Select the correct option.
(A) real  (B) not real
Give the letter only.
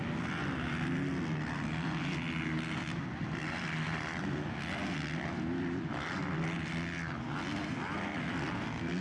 A